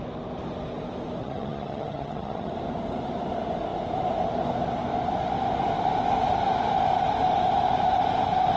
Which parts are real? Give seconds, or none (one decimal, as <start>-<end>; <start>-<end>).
0.0-1.2; 2.5-8.6